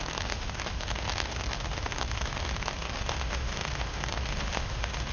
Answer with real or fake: fake